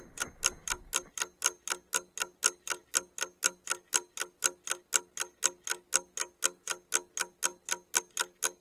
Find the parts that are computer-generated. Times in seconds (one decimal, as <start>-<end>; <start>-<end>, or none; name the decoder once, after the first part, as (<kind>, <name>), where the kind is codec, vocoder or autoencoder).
none